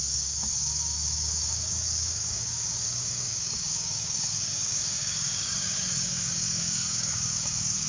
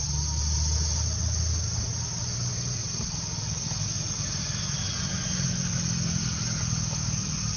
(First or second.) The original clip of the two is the second